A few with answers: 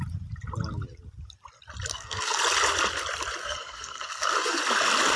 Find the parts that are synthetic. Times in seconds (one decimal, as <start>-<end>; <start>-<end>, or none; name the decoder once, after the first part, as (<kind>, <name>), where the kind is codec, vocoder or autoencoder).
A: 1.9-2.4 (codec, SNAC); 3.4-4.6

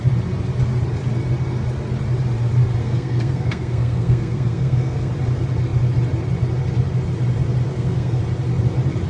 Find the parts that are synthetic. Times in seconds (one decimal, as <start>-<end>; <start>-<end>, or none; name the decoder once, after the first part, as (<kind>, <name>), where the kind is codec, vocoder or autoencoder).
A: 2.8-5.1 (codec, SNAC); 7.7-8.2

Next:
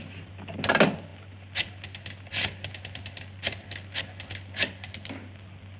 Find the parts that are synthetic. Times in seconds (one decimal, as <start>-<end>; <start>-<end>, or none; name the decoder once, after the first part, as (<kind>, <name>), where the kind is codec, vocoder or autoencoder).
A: none